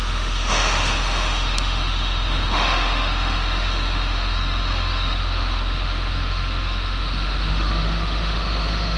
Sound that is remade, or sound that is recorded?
remade